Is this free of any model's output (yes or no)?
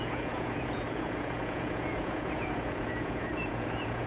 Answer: no